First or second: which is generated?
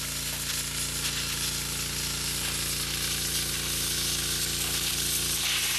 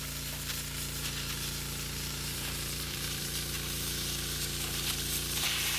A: second